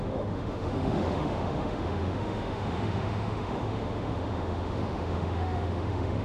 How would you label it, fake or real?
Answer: fake